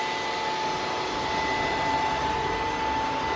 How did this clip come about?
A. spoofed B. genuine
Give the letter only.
B